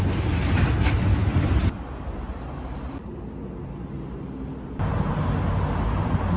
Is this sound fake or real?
real